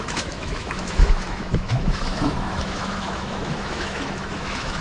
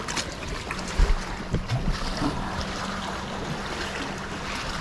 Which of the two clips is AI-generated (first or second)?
first